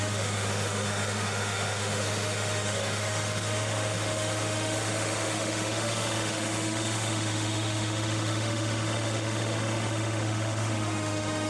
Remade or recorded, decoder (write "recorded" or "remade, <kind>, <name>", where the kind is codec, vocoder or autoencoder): remade, autoencoder, DAC-VAE